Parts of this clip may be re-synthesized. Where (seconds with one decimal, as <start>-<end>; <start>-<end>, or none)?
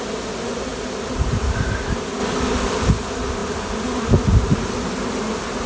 0.7-1.3; 2.2-2.9; 3.4-5.7